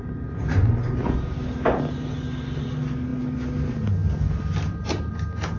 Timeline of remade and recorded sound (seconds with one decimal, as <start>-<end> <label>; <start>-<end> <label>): 0.0-5.6 recorded